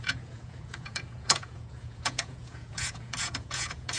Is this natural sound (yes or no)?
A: no